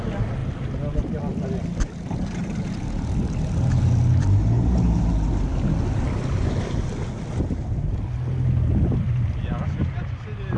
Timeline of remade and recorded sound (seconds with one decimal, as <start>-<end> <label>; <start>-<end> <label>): 0.0-10.6 recorded